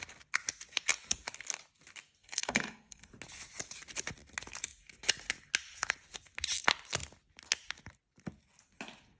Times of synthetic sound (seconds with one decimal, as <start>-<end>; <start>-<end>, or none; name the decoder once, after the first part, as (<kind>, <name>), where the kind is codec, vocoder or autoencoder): 2.2-3.1 (codec, SNAC)